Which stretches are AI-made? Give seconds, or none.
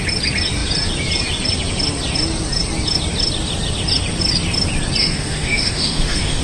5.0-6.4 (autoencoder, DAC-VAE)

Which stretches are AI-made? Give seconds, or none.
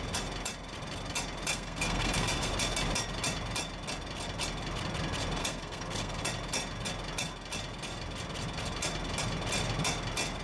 1.5-2.5 (codec, SNAC); 5.4-6.2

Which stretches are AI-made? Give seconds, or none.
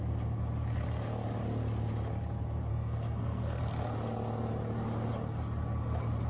2.7-3.6 (codec, SNAC)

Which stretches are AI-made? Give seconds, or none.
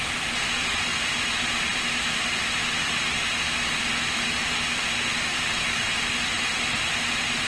none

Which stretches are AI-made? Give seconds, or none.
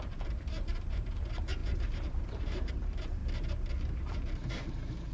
0.0-3.2 (vocoder, BigVGAN v2); 4.0-5.1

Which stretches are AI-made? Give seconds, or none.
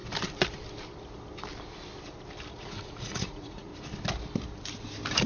2.5-3.7 (vocoder, Vocos)